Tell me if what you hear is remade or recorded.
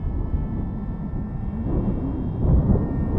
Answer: recorded